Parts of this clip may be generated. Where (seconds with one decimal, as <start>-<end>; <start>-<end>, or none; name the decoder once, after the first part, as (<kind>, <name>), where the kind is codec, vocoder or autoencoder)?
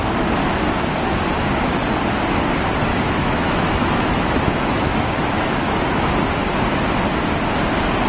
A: 2.9-5.9 (autoencoder, DAC-VAE)